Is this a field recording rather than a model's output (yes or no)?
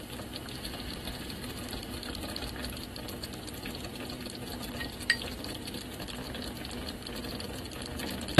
yes